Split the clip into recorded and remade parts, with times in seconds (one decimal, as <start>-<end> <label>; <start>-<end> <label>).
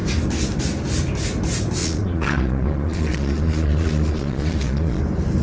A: 0.0-1.8 recorded; 1.8-5.0 remade; 5.0-5.4 recorded